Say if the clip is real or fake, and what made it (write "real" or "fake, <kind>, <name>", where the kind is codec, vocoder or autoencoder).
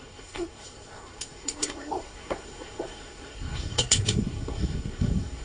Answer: fake, codec, SNAC